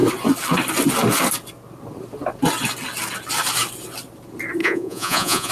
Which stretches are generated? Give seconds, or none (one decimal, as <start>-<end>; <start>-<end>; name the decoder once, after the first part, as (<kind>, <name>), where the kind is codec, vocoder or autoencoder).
4.6-5.5 (vocoder, Vocos)